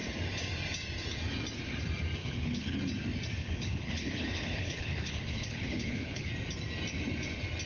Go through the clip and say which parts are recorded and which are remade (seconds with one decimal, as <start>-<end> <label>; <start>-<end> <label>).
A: 0.0-2.2 recorded; 2.2-2.8 remade; 2.8-3.4 recorded; 3.4-6.3 remade; 6.3-7.7 recorded